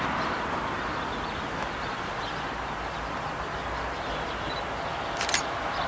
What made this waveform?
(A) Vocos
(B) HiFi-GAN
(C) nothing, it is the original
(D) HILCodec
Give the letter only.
C